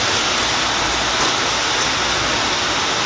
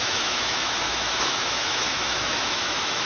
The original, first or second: first